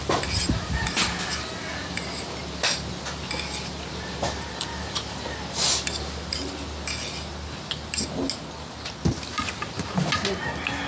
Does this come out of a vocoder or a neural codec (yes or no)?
no